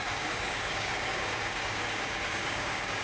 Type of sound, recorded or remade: remade